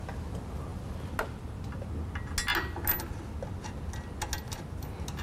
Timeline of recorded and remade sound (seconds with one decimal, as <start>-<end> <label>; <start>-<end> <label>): 0.0-5.2 recorded